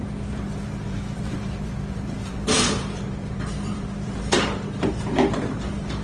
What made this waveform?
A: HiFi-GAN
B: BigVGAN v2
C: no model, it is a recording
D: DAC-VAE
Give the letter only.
B